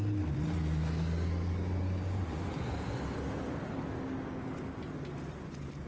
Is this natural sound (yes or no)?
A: yes